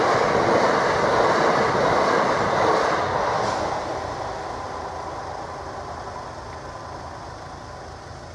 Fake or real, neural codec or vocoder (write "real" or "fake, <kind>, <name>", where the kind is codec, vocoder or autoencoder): real